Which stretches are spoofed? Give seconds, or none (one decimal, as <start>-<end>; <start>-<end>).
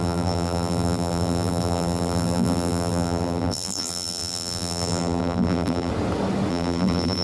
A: 0.0-5.9; 6.5-7.2